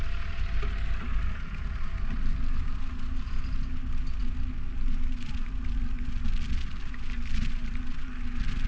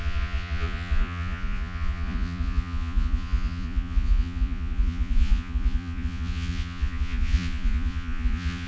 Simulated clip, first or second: second